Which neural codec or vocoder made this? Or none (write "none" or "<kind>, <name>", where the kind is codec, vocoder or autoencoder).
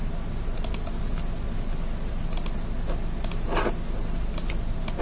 none